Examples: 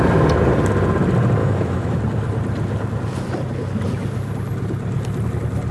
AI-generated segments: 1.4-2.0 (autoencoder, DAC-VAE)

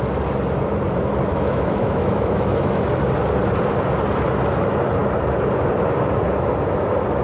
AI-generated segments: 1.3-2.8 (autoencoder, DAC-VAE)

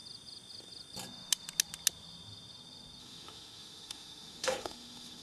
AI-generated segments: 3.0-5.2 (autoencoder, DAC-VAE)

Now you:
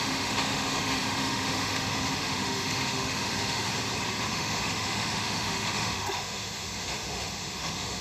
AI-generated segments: 0.0-3.7 (autoencoder, DAC-VAE); 4.3-8.0

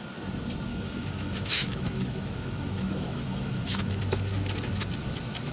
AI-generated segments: 0.7-4.0 (autoencoder, DAC-VAE)

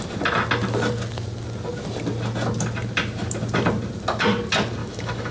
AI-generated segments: 4.8-5.3 (autoencoder, DAC-VAE)

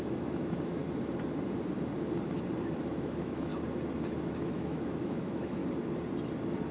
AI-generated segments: 0.0-0.8 (autoencoder, DAC-VAE); 2.9-3.5; 4.1-5.6

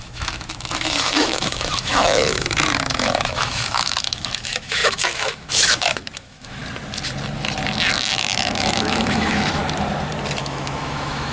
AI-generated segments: 0.0-6.6 (autoencoder, DAC-VAE); 8.1-9.6; 10.4-11.3